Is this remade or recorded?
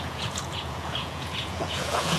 remade